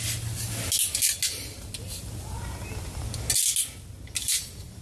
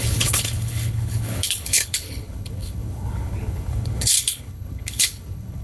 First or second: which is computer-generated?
second